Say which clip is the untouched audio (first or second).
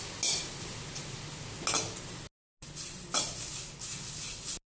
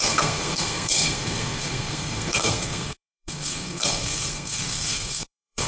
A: first